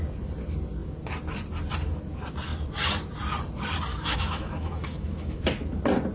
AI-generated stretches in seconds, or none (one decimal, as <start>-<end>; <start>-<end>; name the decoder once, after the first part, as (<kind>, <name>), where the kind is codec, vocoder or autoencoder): 3.9-5.4 (autoencoder, DAC-VAE)

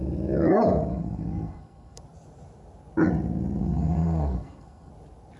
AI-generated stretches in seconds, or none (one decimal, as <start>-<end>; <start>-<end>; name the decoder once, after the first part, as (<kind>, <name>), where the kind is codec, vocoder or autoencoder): 0.9-2.0 (codec, SNAC); 3.6-4.9

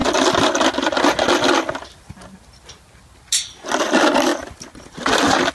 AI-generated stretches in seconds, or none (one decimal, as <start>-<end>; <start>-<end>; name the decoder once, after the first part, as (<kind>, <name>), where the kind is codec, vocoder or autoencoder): 4.3-5.0 (vocoder, BigVGAN v2)

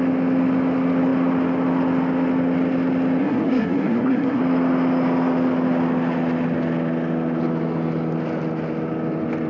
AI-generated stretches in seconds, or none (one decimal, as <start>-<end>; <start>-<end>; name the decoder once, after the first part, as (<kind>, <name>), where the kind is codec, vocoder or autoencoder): 3.2-4.4 (codec, SNAC)

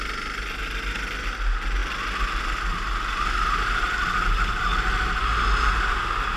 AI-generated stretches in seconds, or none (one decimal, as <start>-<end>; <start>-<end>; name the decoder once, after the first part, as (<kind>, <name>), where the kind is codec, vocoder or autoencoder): none

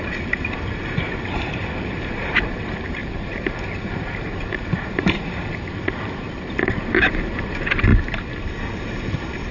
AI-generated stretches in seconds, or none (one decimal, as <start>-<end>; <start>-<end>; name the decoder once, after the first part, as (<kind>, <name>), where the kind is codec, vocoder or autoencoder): 0.0-7.9 (vocoder, BigVGAN v2); 8.8-9.5

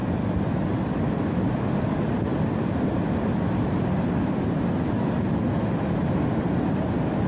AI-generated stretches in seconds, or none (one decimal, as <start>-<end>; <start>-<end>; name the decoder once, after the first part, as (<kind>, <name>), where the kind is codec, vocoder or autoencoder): none